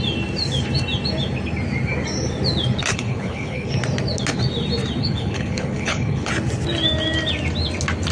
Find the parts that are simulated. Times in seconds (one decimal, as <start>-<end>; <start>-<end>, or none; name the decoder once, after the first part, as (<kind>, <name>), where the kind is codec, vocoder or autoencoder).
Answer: 2.9-3.7 (codec, HILCodec); 5.0-6.3